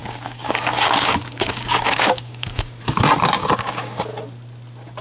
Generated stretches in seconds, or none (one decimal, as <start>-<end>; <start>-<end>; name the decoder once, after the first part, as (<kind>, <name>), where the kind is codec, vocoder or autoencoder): 0.0-2.8 (codec, DAC); 3.4-4.0